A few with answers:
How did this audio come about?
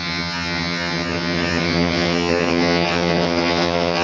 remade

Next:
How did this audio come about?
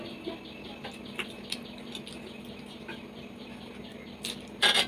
recorded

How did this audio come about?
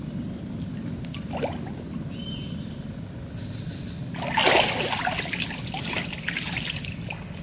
recorded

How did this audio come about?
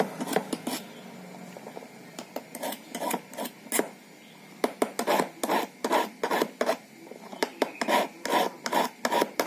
recorded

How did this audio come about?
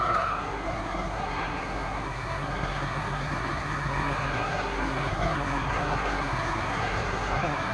remade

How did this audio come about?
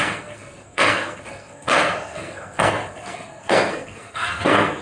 remade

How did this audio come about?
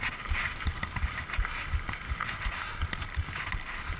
recorded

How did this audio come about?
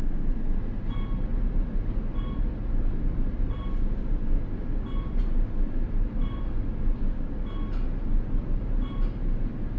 recorded